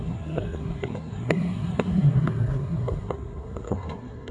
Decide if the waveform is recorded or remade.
remade